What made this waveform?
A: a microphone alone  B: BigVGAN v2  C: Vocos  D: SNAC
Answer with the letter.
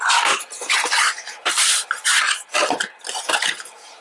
A